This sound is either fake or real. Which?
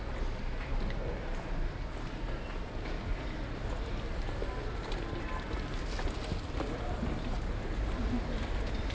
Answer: real